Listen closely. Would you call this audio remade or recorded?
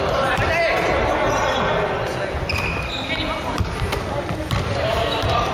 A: recorded